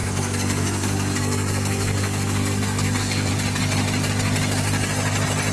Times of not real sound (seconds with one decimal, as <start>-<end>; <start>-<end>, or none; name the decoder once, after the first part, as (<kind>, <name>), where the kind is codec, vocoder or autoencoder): 0.0-3.3 (codec, SNAC)